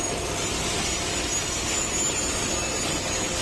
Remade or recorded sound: recorded